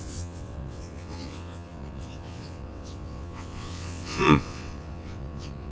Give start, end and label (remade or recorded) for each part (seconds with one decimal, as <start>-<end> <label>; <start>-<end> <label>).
0.0-5.7 remade